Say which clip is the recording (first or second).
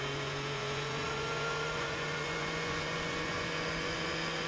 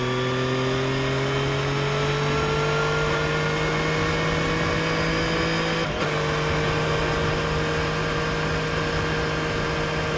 second